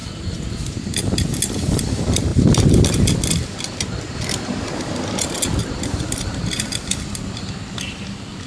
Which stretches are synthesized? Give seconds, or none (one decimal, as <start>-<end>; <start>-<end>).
0.0-1.0; 5.6-6.7